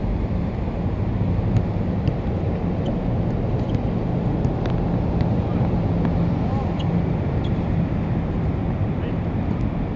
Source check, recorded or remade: recorded